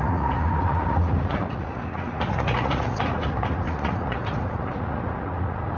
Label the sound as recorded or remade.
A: remade